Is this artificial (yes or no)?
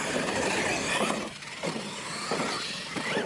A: yes